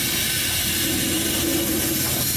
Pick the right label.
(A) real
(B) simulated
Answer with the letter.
A